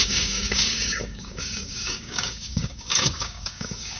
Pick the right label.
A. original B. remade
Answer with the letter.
B